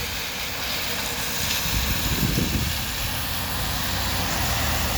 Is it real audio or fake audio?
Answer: real